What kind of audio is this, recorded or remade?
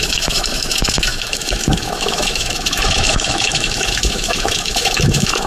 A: remade